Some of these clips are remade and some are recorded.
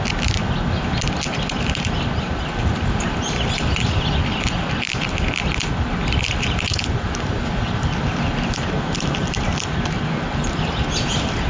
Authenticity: recorded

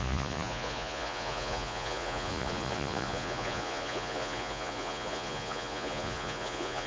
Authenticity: remade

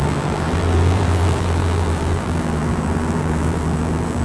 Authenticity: remade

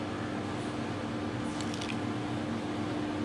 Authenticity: recorded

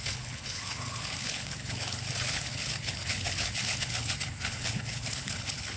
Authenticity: remade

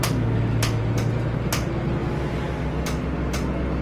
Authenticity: recorded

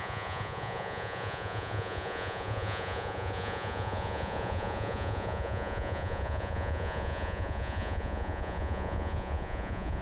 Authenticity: remade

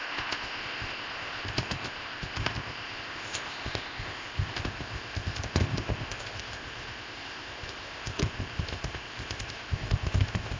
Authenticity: remade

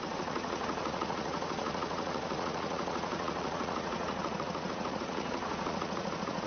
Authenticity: remade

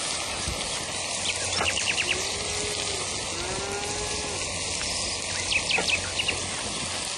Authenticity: recorded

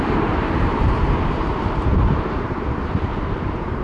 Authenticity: remade